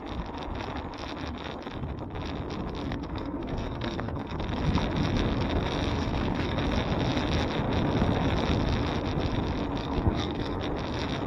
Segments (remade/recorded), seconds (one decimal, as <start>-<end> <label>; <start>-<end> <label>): 0.0-2.8 recorded; 2.8-4.4 remade; 4.4-5.9 recorded; 5.9-6.6 remade; 6.6-9.8 recorded; 9.8-10.6 remade; 10.6-11.3 recorded